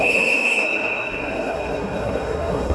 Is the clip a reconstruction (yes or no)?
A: yes